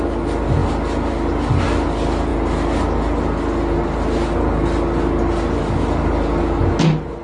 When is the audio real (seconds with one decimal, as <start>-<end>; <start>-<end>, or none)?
0.0-7.2